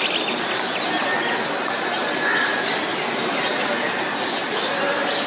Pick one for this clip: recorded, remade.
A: recorded